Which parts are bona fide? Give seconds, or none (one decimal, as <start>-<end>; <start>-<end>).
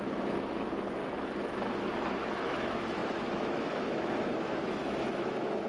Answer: 1.0-2.3